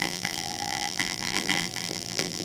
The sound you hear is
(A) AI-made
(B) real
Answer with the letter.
A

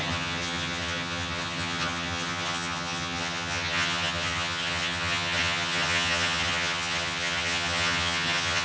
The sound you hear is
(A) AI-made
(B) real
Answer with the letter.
A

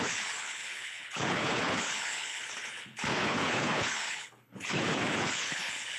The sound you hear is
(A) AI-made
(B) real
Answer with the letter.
A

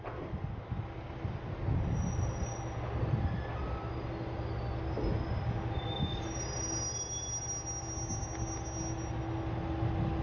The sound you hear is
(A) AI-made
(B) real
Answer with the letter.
B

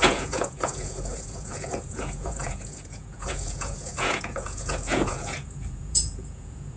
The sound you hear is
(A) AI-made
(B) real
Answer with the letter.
A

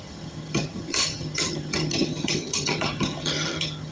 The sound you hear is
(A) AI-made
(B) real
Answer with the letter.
A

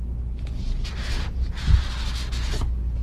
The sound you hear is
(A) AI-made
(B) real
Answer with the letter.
B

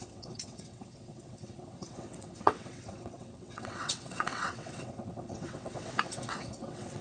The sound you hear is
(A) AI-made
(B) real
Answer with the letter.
A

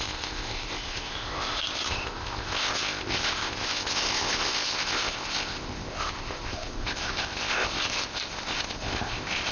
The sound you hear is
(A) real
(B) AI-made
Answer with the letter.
B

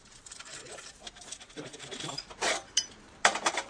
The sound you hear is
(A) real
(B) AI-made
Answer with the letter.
B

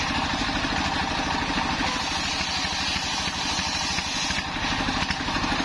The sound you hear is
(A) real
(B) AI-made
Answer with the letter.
A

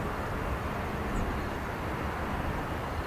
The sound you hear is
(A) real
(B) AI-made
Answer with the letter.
A